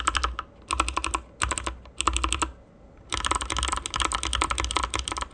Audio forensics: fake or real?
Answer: real